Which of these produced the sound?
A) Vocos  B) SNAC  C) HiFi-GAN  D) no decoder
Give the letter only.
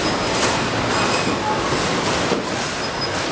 D